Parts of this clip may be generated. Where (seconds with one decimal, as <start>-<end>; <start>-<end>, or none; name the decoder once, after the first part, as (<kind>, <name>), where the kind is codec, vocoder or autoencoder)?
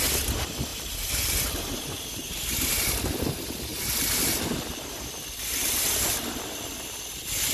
0.7-2.7 (vocoder, BigVGAN v2)